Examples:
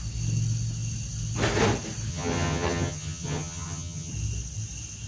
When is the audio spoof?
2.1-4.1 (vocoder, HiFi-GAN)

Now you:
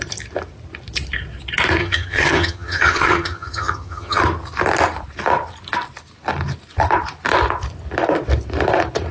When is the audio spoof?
1.8-4.2 (vocoder, HiFi-GAN)

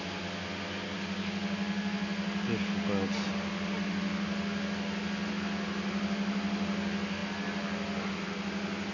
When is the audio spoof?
none

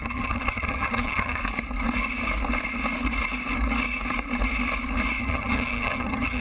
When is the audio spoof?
0.0-1.4 (vocoder, HiFi-GAN); 5.2-6.4

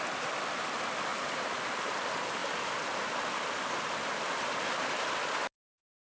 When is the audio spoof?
none